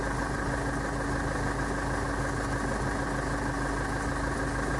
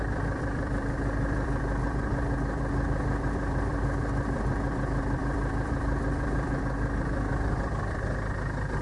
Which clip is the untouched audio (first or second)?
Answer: first